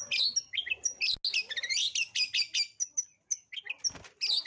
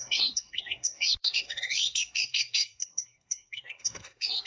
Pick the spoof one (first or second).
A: second